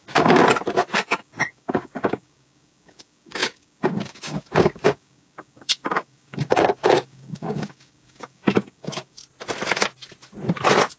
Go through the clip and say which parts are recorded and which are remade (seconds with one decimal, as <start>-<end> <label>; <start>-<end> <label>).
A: 0.0-0.4 remade; 0.4-0.9 recorded; 0.9-9.2 remade; 9.2-11.0 recorded